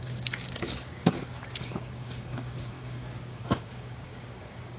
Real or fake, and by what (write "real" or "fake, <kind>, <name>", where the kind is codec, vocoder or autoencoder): fake, codec, DAC